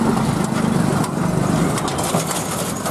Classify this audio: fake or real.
real